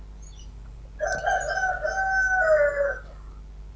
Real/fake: real